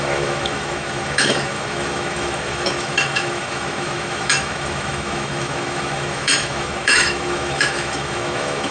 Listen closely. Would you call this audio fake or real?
fake